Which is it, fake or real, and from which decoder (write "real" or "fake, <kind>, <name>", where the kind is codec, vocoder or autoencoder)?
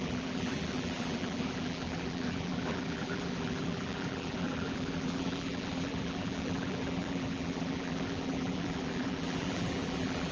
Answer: fake, vocoder, BigVGAN v2